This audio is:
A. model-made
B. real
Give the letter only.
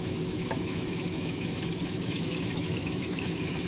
A